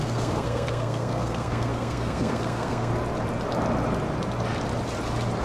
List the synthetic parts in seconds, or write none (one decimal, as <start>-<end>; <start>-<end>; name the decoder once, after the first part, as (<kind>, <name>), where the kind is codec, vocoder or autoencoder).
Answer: 0.0-2.9 (codec, SNAC)